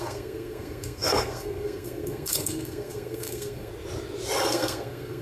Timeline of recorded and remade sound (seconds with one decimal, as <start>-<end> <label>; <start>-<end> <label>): 0.0-3.7 remade; 3.7-4.5 recorded; 4.5-5.2 remade

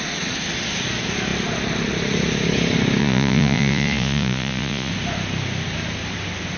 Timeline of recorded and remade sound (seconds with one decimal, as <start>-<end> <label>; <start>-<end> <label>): 0.0-3.0 recorded; 3.0-4.9 remade; 4.9-6.6 recorded

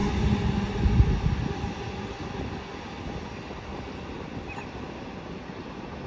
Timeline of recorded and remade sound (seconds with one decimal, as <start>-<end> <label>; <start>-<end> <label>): 0.0-6.1 recorded

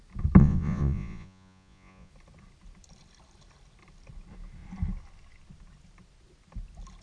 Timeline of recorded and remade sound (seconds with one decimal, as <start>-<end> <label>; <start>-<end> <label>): 0.0-0.4 recorded; 0.4-2.1 remade; 2.1-7.0 recorded

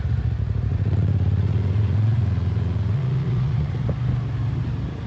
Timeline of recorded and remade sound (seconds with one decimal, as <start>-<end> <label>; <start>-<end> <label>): 0.0-0.7 recorded; 0.7-3.8 remade; 3.8-5.1 recorded

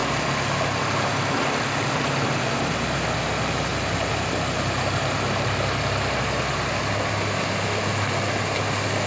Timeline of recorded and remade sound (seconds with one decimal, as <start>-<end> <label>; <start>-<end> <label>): 0.0-9.1 recorded

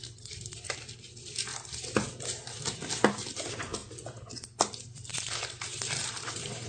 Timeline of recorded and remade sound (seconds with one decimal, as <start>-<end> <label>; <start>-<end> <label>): 0.0-1.5 remade; 1.5-3.1 recorded; 3.1-3.8 remade; 3.8-4.3 recorded; 4.3-5.1 remade; 5.1-5.9 recorded; 5.9-6.7 remade